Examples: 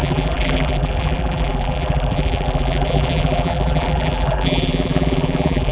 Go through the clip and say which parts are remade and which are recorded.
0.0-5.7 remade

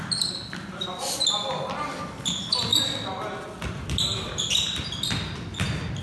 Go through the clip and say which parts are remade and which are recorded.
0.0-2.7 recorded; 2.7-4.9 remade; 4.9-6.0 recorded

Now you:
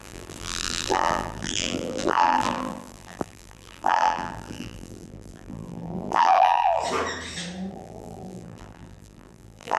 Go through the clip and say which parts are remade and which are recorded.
0.0-6.8 remade; 6.8-7.7 recorded; 7.7-9.8 remade

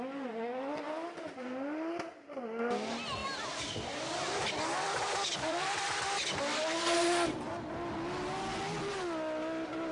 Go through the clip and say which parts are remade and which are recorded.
0.0-3.2 recorded; 3.2-6.4 remade; 6.4-9.9 recorded

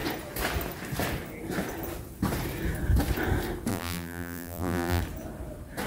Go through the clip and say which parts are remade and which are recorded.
0.0-3.7 recorded; 3.7-5.0 remade; 5.0-5.9 recorded

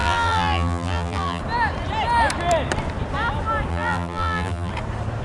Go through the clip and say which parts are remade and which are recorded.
0.0-1.4 remade; 1.4-3.7 recorded; 3.7-4.7 remade; 4.7-5.2 recorded

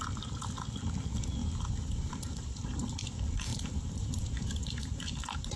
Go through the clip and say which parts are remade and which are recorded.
0.0-1.4 recorded; 1.4-3.0 remade; 3.0-3.5 recorded; 3.5-5.6 remade